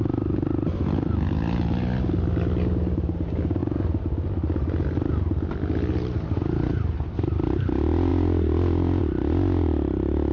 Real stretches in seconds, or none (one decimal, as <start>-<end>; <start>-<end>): 0.0-10.3